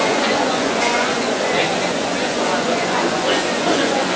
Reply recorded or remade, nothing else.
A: remade